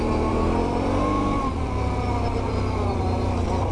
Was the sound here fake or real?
fake